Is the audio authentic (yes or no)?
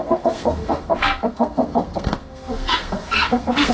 no